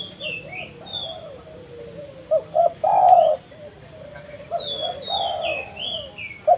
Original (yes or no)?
yes